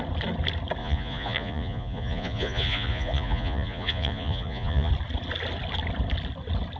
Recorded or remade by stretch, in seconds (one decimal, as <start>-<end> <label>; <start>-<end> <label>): 0.0-0.8 recorded; 0.8-4.9 remade; 4.9-6.8 recorded